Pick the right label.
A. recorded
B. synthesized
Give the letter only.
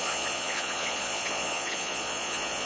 B